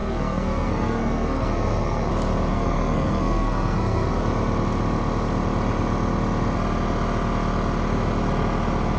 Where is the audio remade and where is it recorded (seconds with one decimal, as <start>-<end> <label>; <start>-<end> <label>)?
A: 0.0-2.1 remade; 2.1-2.5 recorded; 2.5-4.2 remade; 4.2-9.0 recorded